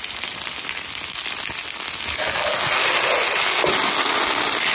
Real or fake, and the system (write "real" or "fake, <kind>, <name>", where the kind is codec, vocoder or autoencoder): real